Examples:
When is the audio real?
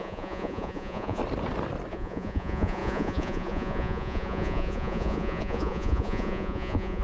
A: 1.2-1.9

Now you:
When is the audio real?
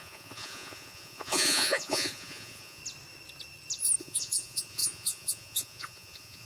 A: 2.8-4.0